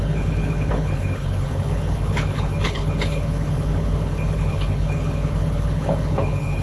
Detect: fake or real fake